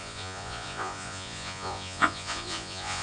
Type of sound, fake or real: fake